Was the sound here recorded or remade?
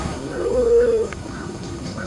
remade